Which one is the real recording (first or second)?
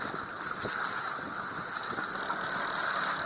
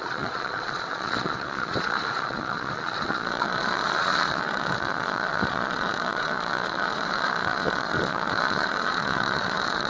first